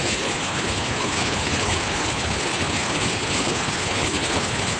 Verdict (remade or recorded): remade